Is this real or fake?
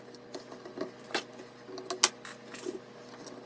real